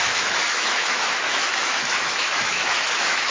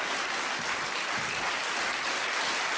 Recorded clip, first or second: second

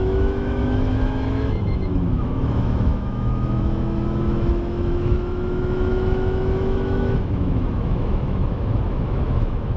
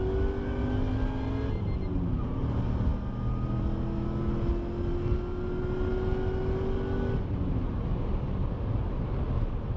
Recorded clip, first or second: second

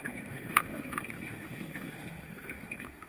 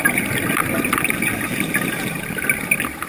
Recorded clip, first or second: second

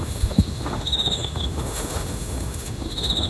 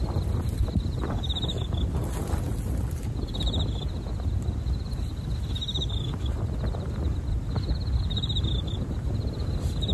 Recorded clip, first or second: second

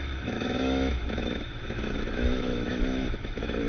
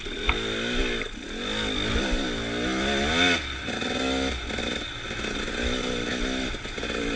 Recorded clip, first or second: second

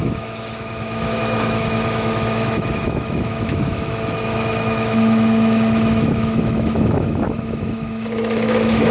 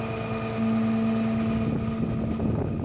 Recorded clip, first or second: second